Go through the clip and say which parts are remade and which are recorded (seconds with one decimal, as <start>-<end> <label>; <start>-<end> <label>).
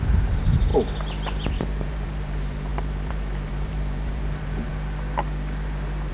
0.0-0.7 remade; 0.7-1.5 recorded; 1.5-4.7 remade; 4.7-6.1 recorded